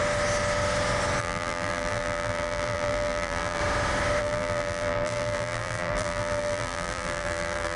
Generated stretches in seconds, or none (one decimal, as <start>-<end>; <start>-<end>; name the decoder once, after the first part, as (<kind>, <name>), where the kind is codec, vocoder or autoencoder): 1.2-3.6 (vocoder, BigVGAN v2); 4.2-7.8